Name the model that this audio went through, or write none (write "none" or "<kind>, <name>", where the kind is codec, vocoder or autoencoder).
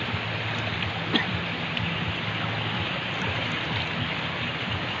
none